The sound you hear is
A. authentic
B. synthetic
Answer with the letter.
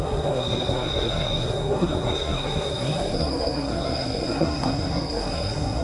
B